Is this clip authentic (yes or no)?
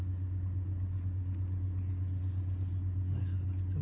yes